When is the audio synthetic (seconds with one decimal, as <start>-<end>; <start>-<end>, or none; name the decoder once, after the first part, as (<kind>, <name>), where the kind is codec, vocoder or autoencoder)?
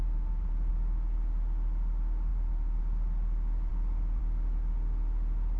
0.0-0.7 (vocoder, BigVGAN v2); 2.3-2.8